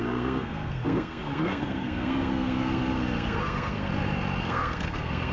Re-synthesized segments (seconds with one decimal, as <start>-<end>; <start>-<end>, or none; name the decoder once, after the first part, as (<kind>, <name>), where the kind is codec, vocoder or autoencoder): 0.0-3.9 (codec, SNAC); 4.4-5.3